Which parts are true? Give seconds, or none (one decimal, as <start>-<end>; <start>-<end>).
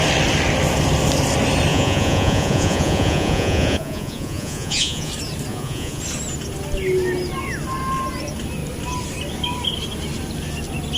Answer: 0.0-1.7; 5.1-5.5; 6.0-11.0